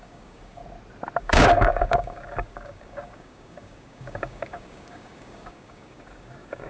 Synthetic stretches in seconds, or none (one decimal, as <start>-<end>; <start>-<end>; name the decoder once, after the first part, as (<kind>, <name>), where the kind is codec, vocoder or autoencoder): 0.0-0.6 (codec, DAC); 1.2-6.7